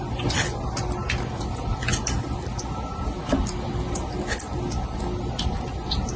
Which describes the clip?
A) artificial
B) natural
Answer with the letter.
B